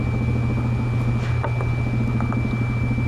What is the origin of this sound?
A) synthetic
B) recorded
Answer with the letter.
B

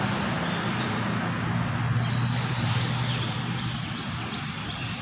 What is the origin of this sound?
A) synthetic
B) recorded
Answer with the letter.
B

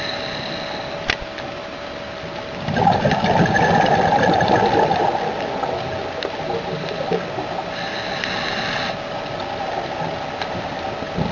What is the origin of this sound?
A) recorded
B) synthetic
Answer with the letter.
A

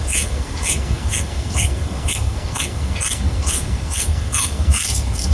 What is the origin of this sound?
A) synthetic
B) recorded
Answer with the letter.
A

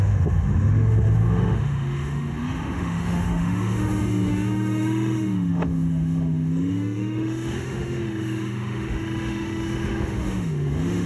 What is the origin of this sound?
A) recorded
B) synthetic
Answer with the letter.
B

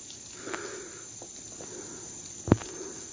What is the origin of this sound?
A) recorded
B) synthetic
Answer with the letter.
A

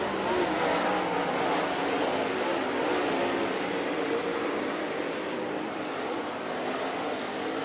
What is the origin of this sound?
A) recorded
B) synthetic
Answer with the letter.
A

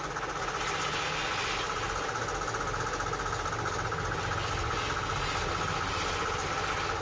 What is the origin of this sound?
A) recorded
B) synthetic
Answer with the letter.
A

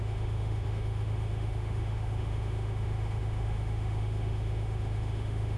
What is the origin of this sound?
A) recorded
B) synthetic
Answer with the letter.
B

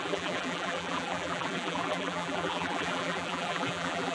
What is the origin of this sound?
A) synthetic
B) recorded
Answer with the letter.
A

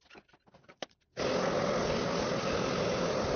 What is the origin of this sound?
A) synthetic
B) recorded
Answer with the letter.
B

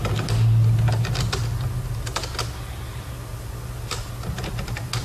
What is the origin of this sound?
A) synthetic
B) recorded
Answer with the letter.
B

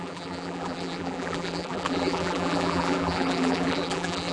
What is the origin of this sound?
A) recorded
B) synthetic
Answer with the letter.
B